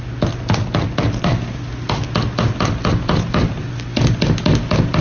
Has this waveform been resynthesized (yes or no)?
no